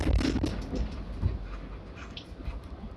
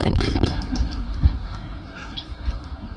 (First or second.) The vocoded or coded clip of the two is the second